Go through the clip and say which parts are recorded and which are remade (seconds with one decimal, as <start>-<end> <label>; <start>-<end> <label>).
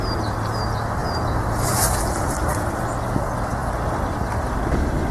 0.0-1.0 recorded; 1.0-2.7 remade; 2.7-5.1 recorded